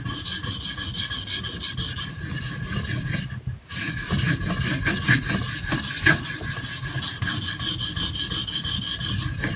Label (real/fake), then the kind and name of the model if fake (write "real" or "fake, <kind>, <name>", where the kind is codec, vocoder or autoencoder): real